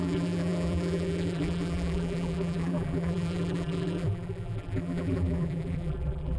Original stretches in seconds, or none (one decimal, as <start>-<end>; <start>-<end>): none